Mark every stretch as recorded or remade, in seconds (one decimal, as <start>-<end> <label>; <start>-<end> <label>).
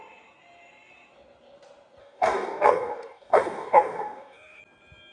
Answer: 0.0-2.0 recorded; 2.0-4.6 remade; 4.6-5.1 recorded